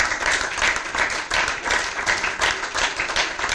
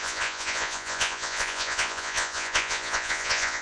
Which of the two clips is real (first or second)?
first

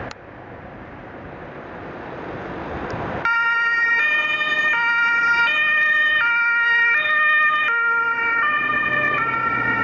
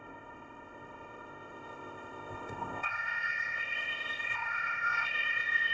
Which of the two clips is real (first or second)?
first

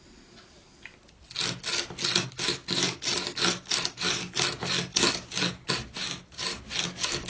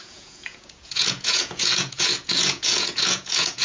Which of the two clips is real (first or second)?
first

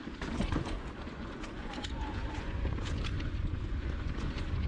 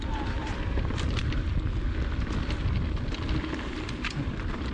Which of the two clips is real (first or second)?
second